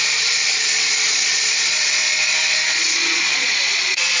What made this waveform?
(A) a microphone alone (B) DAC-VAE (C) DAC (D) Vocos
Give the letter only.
D